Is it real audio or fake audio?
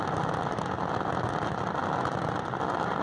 real